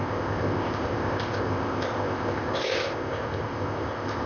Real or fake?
fake